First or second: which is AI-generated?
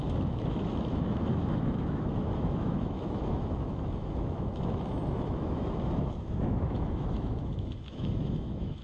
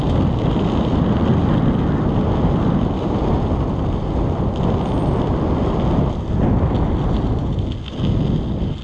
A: first